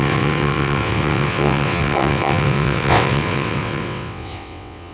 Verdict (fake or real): fake